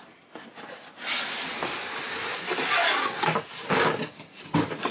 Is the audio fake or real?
real